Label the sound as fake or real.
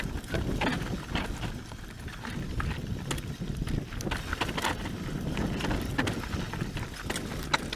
real